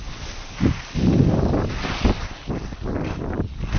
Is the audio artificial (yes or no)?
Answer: no